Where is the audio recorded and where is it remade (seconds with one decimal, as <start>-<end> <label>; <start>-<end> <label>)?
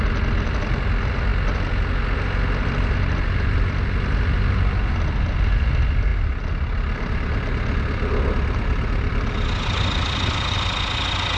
0.0-11.4 recorded